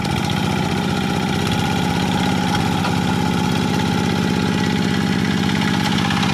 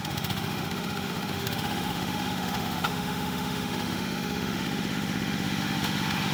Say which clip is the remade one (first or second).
second